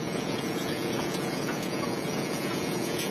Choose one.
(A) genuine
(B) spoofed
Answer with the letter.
B